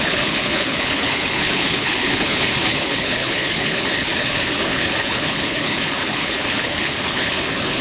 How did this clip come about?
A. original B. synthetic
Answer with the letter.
B